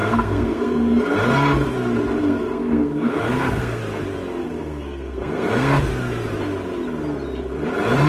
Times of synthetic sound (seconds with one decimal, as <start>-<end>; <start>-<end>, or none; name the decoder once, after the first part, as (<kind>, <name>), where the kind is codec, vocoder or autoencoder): 0.0-1.0 (codec, SNAC); 2.2-3.8; 4.4-5.8